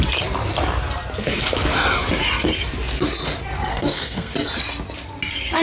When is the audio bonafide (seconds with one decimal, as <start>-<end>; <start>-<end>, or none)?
0.0-3.7; 4.3-5.6